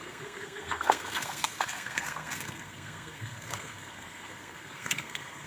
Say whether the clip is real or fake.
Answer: fake